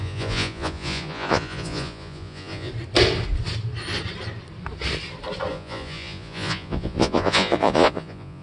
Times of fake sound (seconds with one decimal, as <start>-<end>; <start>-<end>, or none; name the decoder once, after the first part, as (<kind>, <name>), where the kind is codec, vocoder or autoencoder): 0.0-2.7 (vocoder, Vocos); 5.5-8.4